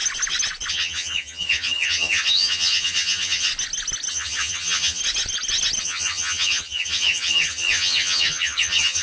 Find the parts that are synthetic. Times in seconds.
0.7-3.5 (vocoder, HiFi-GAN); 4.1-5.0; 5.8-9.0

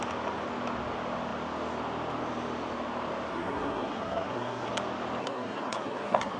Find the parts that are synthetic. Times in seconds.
3.3-4.7 (codec, SNAC); 5.2-6.4

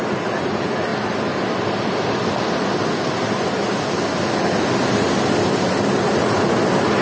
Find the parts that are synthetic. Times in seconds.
none

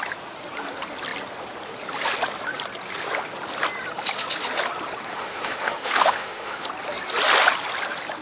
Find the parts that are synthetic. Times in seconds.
5.1-6.7 (autoencoder, DAC-VAE)